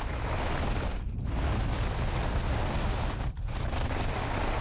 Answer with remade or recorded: recorded